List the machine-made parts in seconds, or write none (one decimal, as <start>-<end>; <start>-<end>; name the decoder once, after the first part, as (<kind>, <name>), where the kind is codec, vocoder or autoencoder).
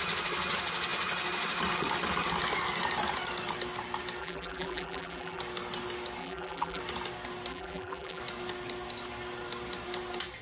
4.2-5.4 (vocoder, BigVGAN v2); 6.2-6.8; 7.5-8.2